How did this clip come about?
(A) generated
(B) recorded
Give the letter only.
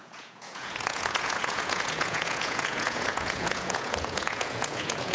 A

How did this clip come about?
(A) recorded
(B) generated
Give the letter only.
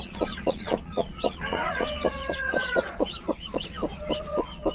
B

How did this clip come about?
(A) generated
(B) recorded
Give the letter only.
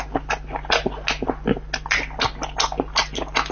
B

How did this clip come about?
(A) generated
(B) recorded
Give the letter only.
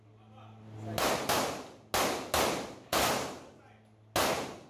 B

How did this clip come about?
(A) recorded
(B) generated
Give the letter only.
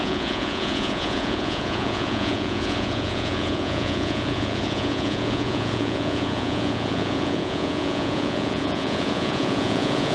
B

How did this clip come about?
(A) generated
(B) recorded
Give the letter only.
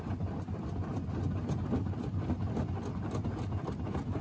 B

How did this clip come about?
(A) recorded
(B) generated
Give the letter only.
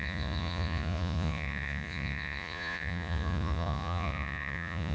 B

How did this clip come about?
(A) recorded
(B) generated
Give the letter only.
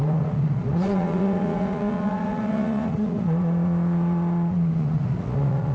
B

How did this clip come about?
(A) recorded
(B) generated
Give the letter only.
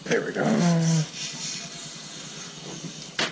A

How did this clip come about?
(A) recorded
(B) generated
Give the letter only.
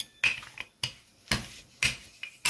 A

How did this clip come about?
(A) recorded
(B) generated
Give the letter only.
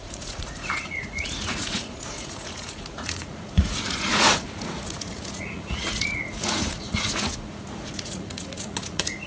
B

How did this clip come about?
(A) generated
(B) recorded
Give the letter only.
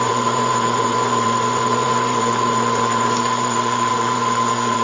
A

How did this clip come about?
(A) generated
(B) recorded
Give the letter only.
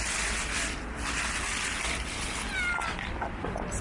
B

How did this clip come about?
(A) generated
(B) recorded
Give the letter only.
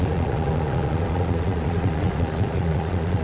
A